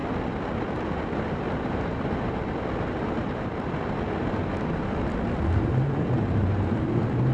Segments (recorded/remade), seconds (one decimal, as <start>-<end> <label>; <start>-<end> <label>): 0.0-1.4 recorded; 1.4-2.4 remade; 2.4-5.5 recorded; 5.5-7.3 remade